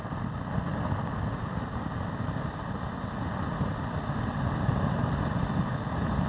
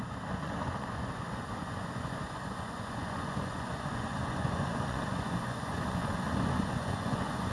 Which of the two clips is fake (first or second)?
second